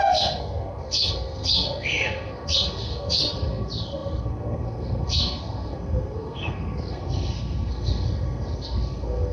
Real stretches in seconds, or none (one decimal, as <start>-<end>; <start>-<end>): none